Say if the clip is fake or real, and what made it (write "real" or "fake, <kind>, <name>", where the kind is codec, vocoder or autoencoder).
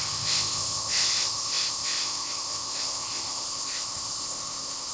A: fake, codec, ZipCodec